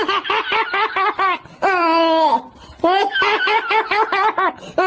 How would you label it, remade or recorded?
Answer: recorded